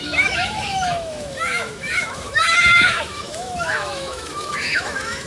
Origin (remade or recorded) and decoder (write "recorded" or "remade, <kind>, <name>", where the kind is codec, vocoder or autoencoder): remade, autoencoder, DAC-VAE